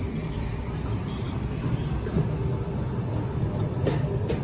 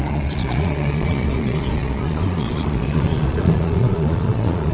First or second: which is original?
first